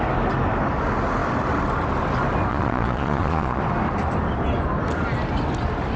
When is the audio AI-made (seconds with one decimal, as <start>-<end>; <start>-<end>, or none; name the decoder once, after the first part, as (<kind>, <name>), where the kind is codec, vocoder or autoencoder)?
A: 2.5-3.6 (vocoder, Vocos)